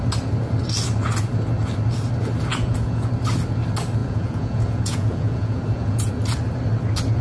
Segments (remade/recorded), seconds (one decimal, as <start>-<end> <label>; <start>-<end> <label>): 0.0-2.5 recorded; 2.5-3.0 remade; 3.0-4.0 recorded; 4.0-6.1 remade; 6.1-7.2 recorded